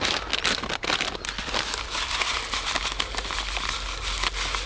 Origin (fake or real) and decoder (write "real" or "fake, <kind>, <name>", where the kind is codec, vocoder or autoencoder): real